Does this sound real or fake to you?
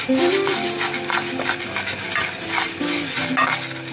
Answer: real